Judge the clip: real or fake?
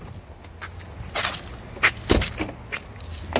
real